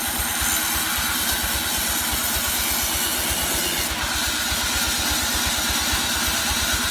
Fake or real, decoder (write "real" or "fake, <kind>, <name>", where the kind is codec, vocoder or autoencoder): real